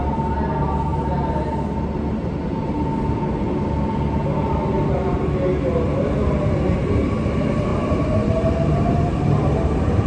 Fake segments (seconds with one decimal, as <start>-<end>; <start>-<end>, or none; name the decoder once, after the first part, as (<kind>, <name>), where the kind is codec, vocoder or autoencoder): 7.7-9.0 (vocoder, BigVGAN v2)